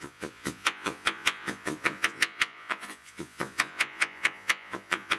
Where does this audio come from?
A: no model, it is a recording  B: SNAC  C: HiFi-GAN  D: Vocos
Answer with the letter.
D